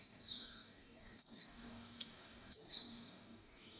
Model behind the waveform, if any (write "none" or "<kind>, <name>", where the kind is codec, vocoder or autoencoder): codec, DAC